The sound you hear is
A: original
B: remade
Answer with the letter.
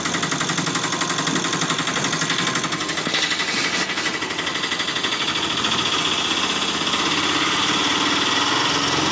A